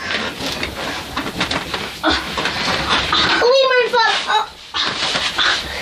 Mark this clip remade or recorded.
recorded